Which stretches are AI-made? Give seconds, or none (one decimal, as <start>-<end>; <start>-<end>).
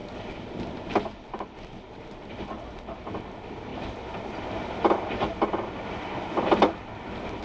0.0-3.7; 5.9-7.4